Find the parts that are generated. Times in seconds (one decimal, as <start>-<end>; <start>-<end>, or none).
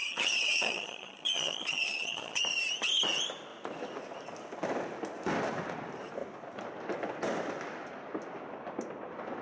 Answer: 0.0-2.4